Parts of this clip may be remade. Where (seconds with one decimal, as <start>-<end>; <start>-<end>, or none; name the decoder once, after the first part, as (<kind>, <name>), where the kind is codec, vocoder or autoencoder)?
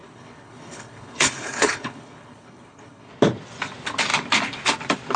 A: 0.0-3.1 (codec, HILCodec)